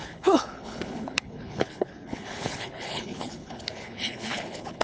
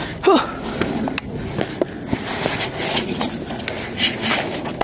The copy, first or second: first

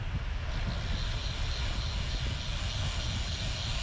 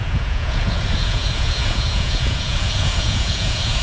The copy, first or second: second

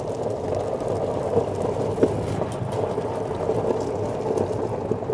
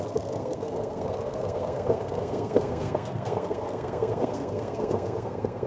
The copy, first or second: second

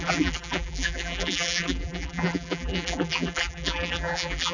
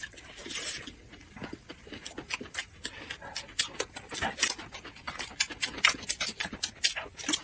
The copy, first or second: first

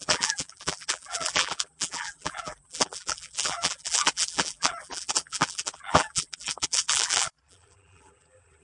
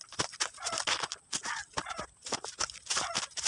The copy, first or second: first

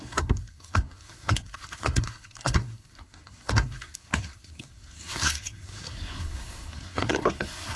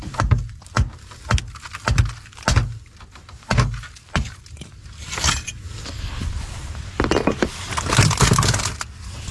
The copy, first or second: first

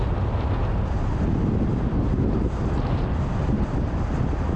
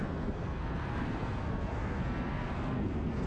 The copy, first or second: second